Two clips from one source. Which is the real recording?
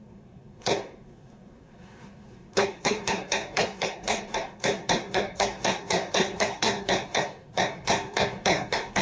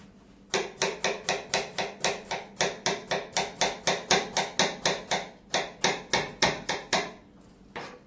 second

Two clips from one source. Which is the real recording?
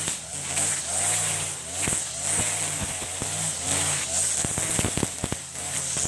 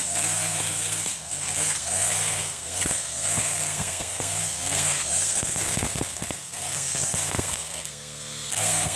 first